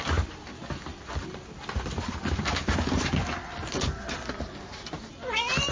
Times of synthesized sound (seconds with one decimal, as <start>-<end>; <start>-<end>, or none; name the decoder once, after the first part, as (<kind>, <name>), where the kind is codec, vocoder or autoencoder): none